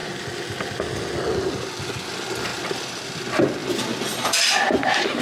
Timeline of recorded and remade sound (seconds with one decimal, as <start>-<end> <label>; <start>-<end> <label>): 0.0-2.5 recorded; 2.5-3.2 remade; 3.2-3.6 recorded; 3.6-4.5 remade; 4.5-5.2 recorded